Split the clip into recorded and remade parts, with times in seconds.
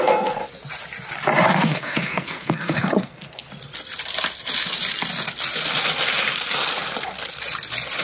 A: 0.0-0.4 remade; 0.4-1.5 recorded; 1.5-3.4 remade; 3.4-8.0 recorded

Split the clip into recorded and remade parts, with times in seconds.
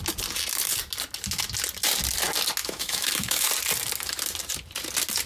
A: 0.0-2.6 recorded; 2.6-3.5 remade; 3.5-5.3 recorded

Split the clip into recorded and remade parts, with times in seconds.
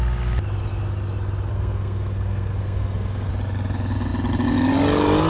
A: 0.0-1.5 recorded; 1.5-3.3 remade; 3.3-5.3 recorded